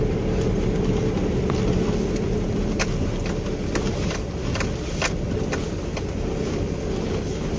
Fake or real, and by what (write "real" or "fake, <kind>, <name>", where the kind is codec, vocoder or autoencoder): real